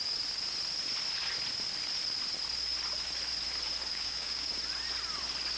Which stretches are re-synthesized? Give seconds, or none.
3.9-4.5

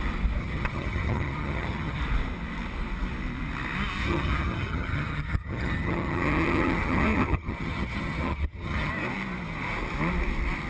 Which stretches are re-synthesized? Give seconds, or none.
0.4-2.0; 4.0-8.9

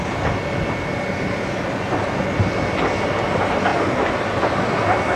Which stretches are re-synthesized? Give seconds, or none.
none